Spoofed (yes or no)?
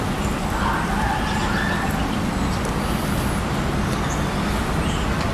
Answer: no